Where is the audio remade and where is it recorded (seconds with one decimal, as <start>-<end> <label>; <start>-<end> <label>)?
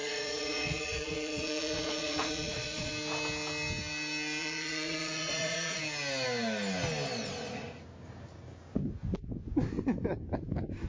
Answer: 0.0-2.9 remade; 2.9-4.4 recorded; 4.4-5.8 remade; 5.8-10.9 recorded